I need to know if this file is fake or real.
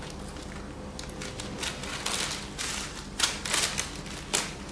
real